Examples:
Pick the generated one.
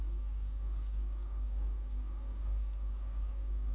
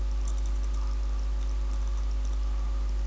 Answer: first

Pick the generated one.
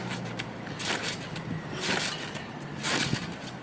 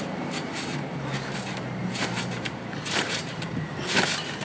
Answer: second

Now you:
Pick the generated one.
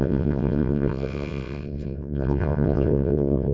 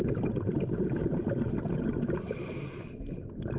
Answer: first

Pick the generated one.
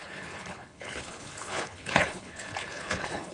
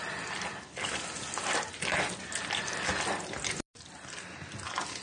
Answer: first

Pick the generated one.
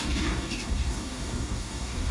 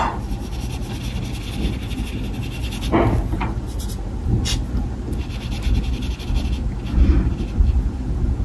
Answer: first